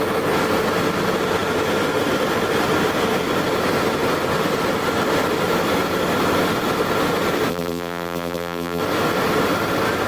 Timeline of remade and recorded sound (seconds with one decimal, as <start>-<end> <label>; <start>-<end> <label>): 0.0-7.5 recorded; 7.5-8.8 remade; 8.8-10.1 recorded